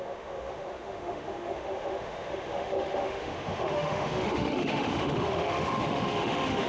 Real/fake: fake